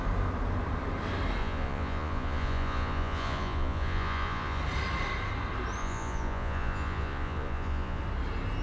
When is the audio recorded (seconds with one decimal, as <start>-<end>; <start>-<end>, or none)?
0.0-1.4; 4.6-5.8; 8.0-8.6